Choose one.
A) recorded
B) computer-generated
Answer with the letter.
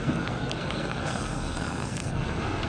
B